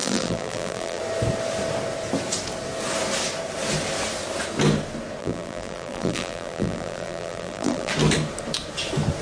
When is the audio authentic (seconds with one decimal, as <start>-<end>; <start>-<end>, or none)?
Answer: 1.0-5.2; 7.9-9.2